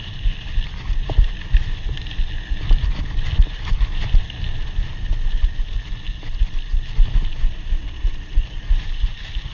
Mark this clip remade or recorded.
recorded